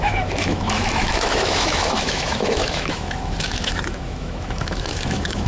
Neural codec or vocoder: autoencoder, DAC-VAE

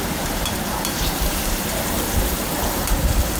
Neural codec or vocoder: vocoder, BigVGAN v2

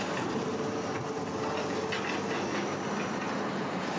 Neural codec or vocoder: none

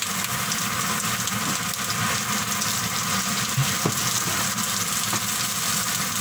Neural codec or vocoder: none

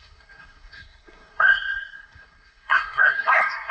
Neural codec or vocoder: codec, SNAC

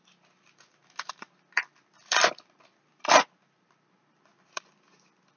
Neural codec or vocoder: vocoder, BigVGAN v2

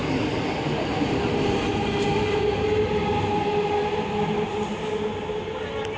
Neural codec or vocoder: none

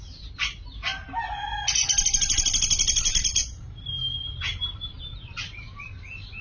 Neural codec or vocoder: none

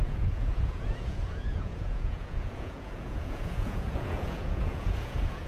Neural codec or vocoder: vocoder, Vocos